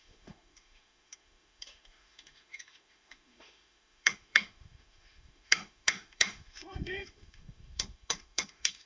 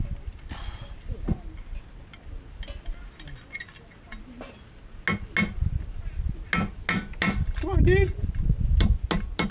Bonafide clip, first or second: second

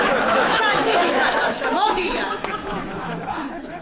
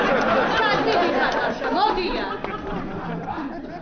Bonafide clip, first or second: second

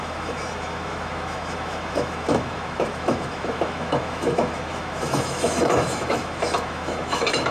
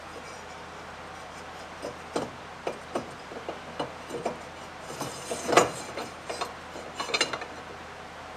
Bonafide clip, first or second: second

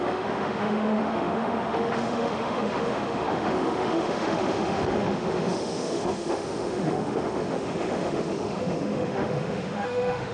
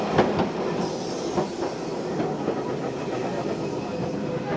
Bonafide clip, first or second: second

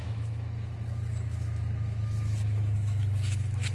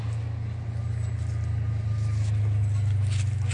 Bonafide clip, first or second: second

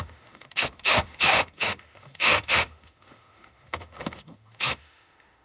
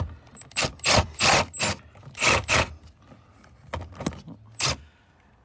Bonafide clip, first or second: second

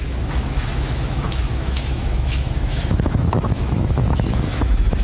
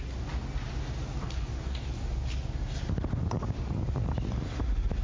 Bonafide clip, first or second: second